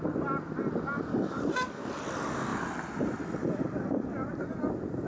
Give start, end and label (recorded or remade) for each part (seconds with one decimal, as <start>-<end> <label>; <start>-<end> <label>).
0.0-1.1 recorded; 1.1-1.9 remade; 1.9-5.1 recorded